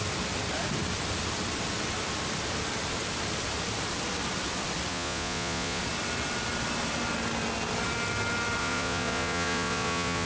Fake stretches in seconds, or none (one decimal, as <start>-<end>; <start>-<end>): 4.9-5.8; 8.6-10.3